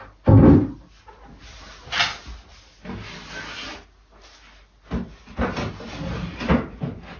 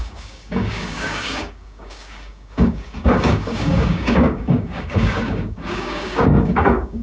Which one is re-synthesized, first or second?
second